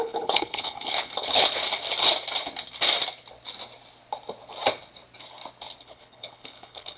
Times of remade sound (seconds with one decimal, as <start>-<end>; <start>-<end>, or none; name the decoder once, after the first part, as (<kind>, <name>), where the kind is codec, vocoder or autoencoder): 0.0-1.6 (codec, HILCodec); 5.8-7.0